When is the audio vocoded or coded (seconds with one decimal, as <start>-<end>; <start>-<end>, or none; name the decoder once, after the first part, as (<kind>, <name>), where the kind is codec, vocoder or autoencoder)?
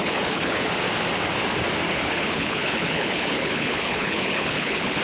0.0-0.7 (codec, HILCodec); 1.9-5.0